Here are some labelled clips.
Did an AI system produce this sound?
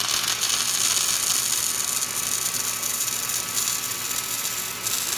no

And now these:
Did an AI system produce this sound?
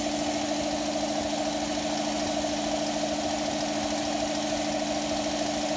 no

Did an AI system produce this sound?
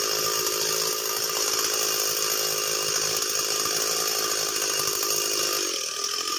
no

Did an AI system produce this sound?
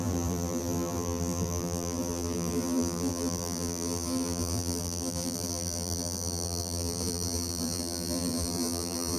yes